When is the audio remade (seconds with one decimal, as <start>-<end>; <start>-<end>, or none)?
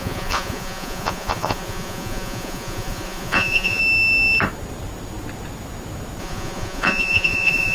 0.0-3.8; 6.2-7.7